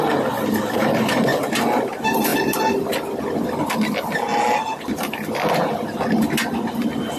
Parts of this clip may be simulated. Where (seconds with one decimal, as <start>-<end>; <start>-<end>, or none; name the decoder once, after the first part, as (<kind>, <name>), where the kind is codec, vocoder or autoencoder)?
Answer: none